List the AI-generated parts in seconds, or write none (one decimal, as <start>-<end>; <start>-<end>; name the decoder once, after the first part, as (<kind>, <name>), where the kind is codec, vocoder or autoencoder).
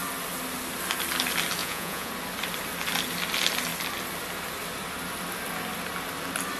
1.6-2.1 (vocoder, Vocos)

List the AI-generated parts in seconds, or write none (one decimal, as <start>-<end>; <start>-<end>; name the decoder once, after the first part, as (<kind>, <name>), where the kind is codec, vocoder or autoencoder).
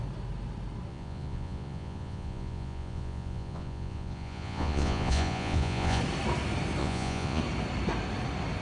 0.9-6.0 (vocoder, Vocos); 6.8-7.4